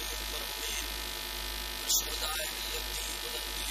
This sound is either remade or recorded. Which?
recorded